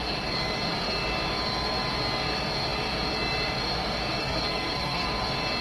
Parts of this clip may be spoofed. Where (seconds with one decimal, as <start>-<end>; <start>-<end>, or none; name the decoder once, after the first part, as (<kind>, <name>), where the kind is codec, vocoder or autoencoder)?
4.2-5.1 (codec, SNAC)